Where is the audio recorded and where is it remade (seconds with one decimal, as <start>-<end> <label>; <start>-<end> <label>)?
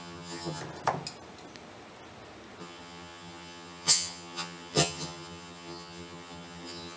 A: 0.0-0.6 remade; 0.6-2.6 recorded; 2.6-7.0 remade